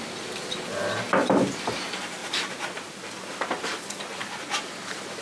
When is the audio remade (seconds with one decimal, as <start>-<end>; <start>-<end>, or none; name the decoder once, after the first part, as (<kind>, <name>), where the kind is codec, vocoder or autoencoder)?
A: none